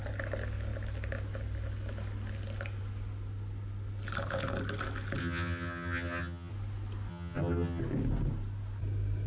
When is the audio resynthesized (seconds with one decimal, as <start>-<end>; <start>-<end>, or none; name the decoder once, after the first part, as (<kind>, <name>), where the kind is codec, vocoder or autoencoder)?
5.2-6.5 (vocoder, HiFi-GAN); 7.1-7.8